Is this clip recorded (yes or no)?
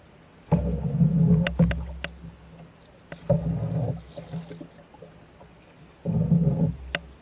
yes